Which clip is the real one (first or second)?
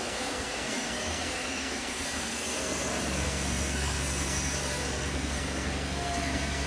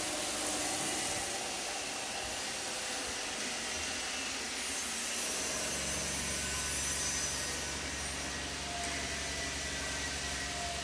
second